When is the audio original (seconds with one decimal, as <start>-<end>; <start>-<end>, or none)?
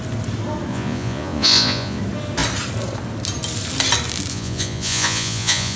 0.0-0.7; 2.0-4.3